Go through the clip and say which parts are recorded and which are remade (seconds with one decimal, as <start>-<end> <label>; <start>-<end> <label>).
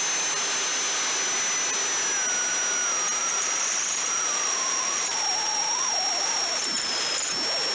0.0-3.2 recorded; 3.2-7.3 remade; 7.3-7.7 recorded